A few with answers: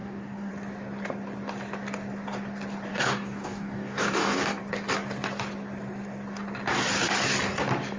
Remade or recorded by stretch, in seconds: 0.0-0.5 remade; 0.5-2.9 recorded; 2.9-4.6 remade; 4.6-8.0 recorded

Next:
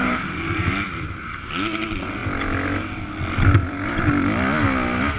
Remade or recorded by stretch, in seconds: 0.0-1.5 remade; 1.5-3.6 recorded; 3.6-4.1 remade; 4.1-5.2 recorded

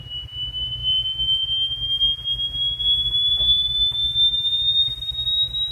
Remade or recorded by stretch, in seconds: 0.0-5.7 recorded

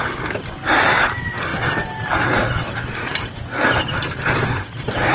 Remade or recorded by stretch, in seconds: 0.0-5.1 recorded

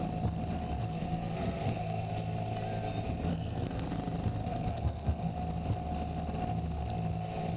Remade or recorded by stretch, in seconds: 0.0-0.8 recorded; 0.8-2.1 remade; 2.1-3.3 recorded; 3.3-3.9 remade; 3.9-4.4 recorded; 4.4-5.3 remade; 5.3-7.6 recorded

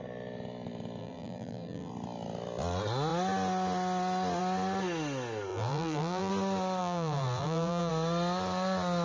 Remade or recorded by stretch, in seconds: 0.0-1.0 recorded; 1.0-1.9 remade; 1.9-5.5 recorded; 5.5-6.3 remade; 6.3-6.8 recorded; 6.8-7.9 remade; 7.9-9.0 recorded

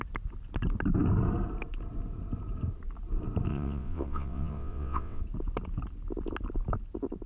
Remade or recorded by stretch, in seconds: 0.0-3.5 recorded; 3.5-5.2 remade; 5.2-7.3 recorded

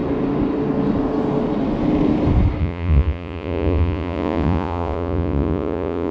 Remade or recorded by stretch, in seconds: 0.0-2.6 recorded; 2.6-6.1 remade